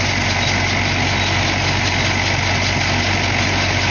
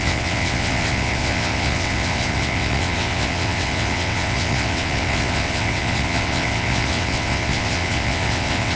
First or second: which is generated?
second